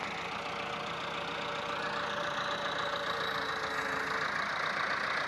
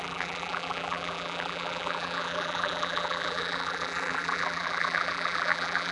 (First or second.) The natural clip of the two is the first